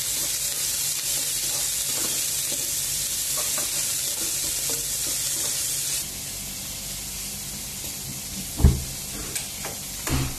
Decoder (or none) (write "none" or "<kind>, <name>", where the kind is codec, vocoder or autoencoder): none